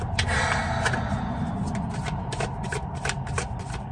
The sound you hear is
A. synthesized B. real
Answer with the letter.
B